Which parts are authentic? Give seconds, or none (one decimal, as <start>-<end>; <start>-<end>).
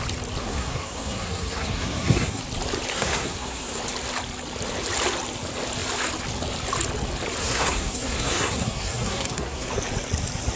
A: 0.0-0.4; 2.4-2.9; 3.8-7.4; 9.7-10.6